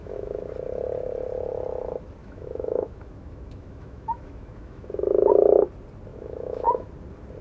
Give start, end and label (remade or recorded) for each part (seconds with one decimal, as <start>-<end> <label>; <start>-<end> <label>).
0.0-0.5 remade; 0.5-2.2 recorded; 2.2-5.3 remade; 5.3-6.1 recorded; 6.1-6.9 remade; 6.9-7.4 recorded

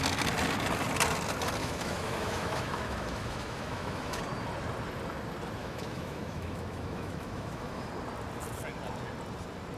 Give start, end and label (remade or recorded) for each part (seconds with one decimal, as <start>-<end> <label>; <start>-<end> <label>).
0.0-1.6 recorded; 1.6-4.2 remade; 4.2-5.6 recorded; 5.6-7.9 remade; 7.9-9.8 recorded

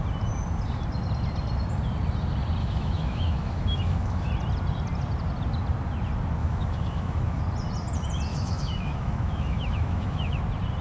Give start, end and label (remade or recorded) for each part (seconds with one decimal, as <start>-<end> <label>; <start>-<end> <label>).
0.0-2.6 recorded; 2.6-4.3 remade; 4.3-6.4 recorded; 6.4-7.4 remade; 7.4-8.3 recorded; 8.3-10.4 remade; 10.4-10.8 recorded

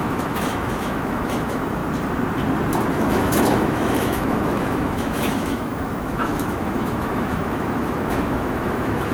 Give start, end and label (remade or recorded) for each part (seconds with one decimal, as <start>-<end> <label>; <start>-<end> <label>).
0.0-1.8 remade; 1.8-2.9 recorded; 2.9-9.1 remade

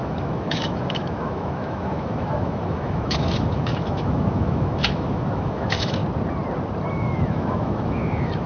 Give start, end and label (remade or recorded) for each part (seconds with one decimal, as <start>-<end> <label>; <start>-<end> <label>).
0.0-6.0 remade; 6.0-6.9 recorded; 6.9-8.5 remade

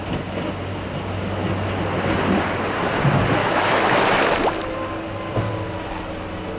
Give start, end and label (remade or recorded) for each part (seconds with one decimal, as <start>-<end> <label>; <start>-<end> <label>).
0.0-3.4 recorded; 3.4-4.2 remade; 4.2-6.6 recorded